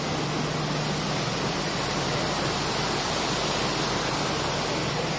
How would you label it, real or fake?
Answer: real